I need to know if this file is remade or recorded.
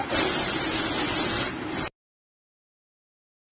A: recorded